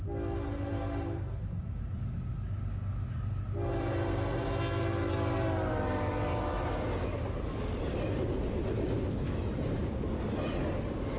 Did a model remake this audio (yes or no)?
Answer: no